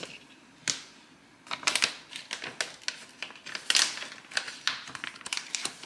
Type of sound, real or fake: real